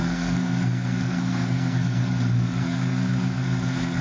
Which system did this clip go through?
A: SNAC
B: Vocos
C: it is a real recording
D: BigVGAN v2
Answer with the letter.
A